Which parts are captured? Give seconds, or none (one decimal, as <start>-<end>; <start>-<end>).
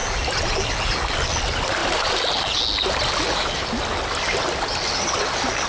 0.0-5.7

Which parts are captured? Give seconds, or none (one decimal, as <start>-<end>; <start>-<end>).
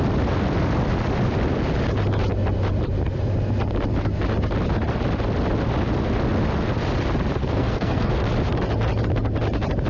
0.0-7.4; 8.1-9.9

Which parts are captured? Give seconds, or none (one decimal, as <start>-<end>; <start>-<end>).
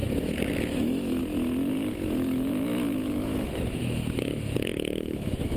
1.2-1.9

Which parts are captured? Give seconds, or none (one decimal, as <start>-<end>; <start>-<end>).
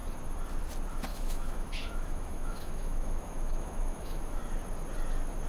0.0-1.1; 4.4-5.5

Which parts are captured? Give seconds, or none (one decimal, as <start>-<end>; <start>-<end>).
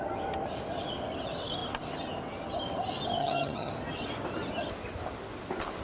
0.0-3.2; 3.7-5.8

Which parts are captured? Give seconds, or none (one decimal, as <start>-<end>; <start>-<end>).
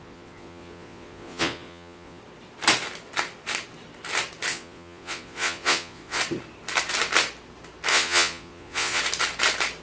2.2-4.5; 6.2-7.9; 9.0-9.8